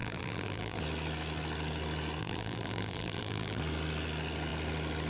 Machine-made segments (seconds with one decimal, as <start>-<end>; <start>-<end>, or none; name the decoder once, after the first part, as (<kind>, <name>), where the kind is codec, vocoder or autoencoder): 0.0-0.8 (vocoder, BigVGAN v2); 2.2-3.6